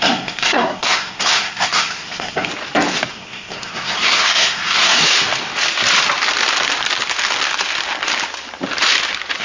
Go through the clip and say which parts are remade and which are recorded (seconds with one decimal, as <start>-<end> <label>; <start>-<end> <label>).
0.0-2.5 remade; 2.5-3.1 recorded; 3.1-5.0 remade; 5.0-9.4 recorded